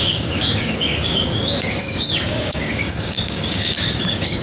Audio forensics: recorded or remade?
remade